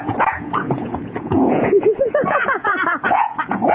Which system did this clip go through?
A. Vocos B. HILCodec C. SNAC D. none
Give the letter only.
A